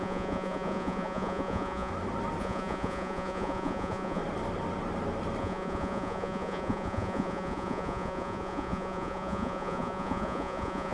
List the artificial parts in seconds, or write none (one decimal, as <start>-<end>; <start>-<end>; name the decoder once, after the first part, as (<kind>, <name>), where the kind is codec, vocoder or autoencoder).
0.0-1.9 (vocoder, Vocos); 2.4-4.2; 5.4-10.9